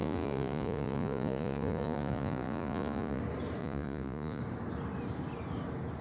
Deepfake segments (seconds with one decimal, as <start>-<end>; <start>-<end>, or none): 0.0-3.2; 3.6-4.4